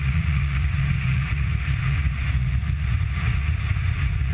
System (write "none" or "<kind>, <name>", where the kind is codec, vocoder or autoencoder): vocoder, Vocos